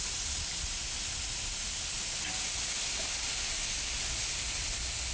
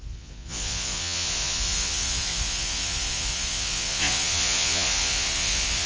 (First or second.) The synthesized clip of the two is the second